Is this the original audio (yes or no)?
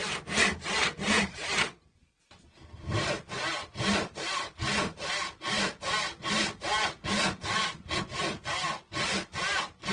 yes